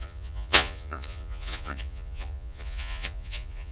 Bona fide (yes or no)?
no